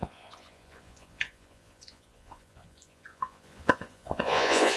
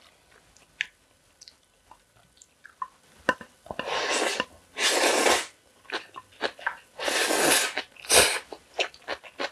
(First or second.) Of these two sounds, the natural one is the second